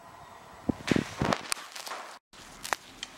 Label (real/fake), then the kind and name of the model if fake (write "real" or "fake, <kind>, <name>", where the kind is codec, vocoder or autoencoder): real